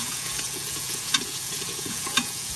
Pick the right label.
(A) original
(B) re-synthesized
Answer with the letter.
B